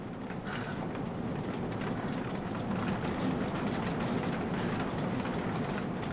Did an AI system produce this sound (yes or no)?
no